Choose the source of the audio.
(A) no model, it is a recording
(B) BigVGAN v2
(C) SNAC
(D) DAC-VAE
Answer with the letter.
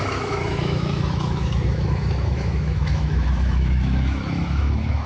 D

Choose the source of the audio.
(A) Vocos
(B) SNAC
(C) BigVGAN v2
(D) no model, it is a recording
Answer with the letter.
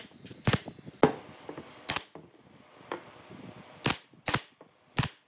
D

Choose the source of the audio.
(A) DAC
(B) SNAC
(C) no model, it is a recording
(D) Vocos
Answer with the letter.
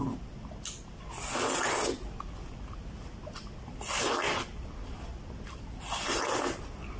C